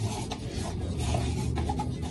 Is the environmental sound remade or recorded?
recorded